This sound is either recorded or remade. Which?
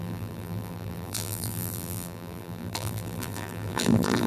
remade